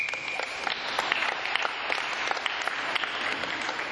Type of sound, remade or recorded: recorded